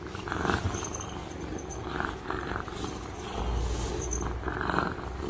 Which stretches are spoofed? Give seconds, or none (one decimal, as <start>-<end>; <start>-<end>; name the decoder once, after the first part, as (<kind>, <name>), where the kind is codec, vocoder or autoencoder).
1.2-3.4 (vocoder, BigVGAN v2)